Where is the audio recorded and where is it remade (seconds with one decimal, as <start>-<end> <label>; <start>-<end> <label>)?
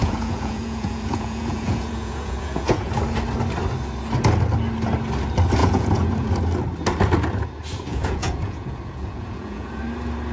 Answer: 0.0-2.9 remade; 2.9-5.6 recorded; 5.6-6.3 remade; 6.3-7.9 recorded; 7.9-9.8 remade; 9.8-10.3 recorded